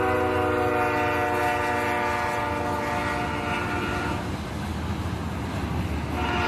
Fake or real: real